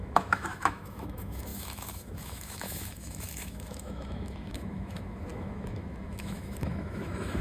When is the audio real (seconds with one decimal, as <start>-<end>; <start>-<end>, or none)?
none

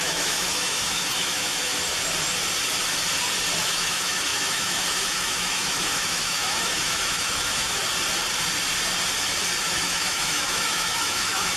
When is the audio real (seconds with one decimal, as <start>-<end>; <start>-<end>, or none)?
1.7-3.6; 7.8-9.6

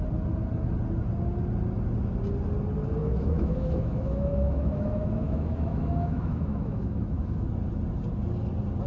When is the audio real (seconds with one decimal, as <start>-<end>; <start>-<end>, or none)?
0.0-3.0; 7.5-8.9